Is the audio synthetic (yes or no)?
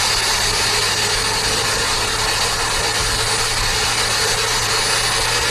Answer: no